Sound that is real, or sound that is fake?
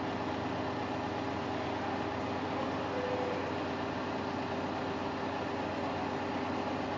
real